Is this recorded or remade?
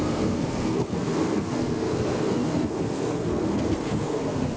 remade